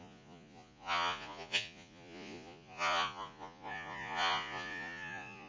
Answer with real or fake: fake